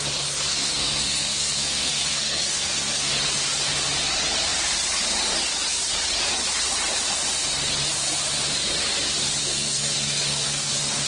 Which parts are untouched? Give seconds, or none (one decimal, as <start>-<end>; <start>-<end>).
0.0-0.5; 3.1-9.4; 10.7-11.1